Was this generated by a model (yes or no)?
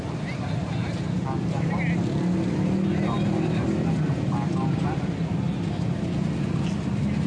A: no